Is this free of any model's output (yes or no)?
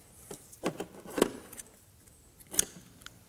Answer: yes